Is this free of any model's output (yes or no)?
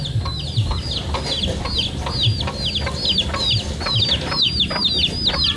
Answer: yes